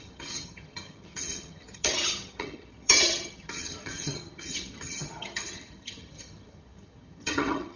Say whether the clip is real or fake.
fake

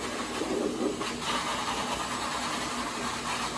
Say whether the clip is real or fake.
real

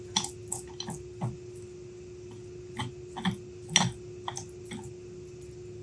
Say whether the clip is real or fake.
real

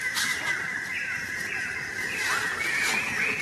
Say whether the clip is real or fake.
real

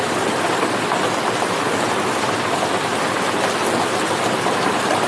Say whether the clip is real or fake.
real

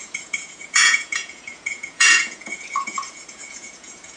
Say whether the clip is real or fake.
fake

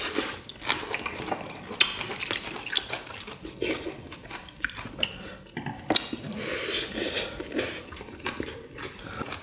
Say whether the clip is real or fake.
real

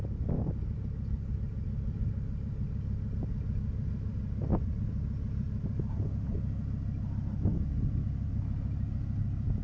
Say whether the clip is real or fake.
real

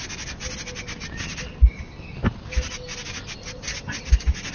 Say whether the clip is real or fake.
real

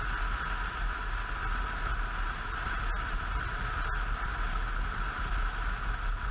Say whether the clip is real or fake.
real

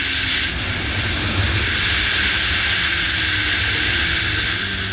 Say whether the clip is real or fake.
real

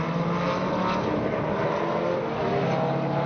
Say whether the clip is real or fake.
real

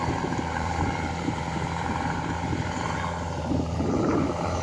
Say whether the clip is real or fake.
fake